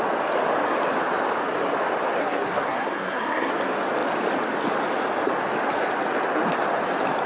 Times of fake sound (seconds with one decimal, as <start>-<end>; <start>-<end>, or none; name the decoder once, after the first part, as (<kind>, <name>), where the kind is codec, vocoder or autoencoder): 2.2-3.5 (codec, SNAC)